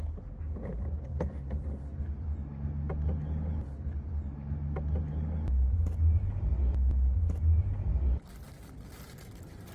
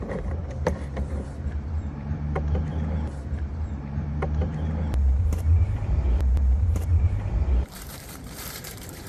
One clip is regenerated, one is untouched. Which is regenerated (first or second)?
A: second